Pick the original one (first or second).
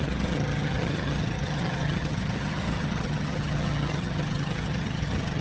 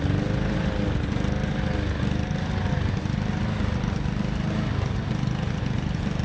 second